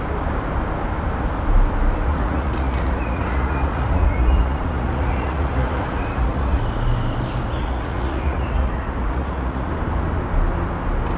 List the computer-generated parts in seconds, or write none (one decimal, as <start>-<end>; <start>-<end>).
2.1-6.6; 7.6-9.7